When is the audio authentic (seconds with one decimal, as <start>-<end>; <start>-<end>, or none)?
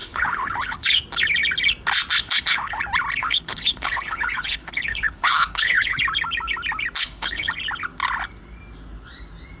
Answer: 1.0-2.2; 2.8-3.2; 6.0-7.0; 7.5-9.6